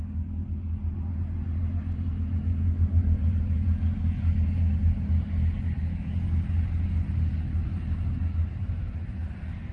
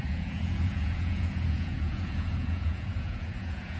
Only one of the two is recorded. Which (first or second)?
first